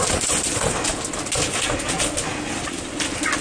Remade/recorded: recorded